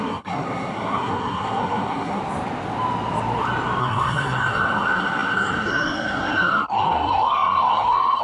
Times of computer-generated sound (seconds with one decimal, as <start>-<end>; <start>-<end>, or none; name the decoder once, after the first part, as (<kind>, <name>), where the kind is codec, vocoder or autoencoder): 0.0-2.2 (codec, SNAC); 3.8-8.2